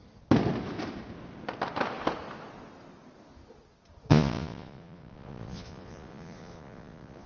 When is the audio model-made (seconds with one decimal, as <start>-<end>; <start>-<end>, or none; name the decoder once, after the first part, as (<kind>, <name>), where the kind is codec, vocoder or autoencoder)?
4.1-7.3 (vocoder, Vocos)